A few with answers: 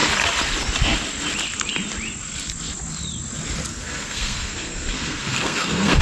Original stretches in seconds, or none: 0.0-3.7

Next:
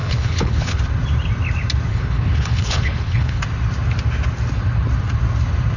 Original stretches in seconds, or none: 0.8-1.9; 3.4-5.8

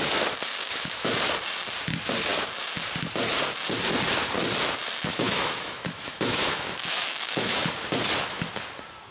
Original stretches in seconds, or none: 0.0-0.6; 1.2-5.1; 7.7-9.1

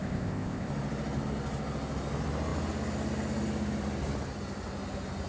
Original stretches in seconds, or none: 0.7-5.3

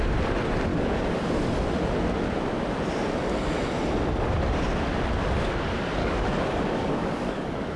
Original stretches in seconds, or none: 0.0-0.7; 1.3-6.0